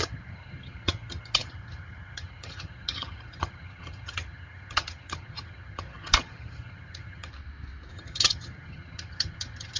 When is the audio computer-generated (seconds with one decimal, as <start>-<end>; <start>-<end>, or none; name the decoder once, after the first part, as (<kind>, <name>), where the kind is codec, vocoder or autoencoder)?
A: 0.0-7.3 (vocoder, HiFi-GAN); 7.9-9.8